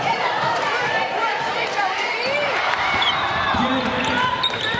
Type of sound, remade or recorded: remade